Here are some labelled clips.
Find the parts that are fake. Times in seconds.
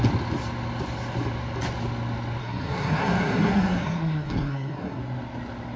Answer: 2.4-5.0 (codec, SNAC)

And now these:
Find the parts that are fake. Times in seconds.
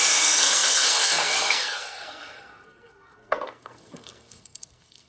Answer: 0.0-5.1 (codec, SNAC)